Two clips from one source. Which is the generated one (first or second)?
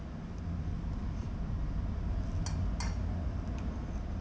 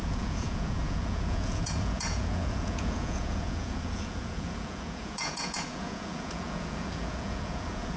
second